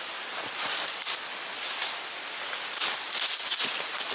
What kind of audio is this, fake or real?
real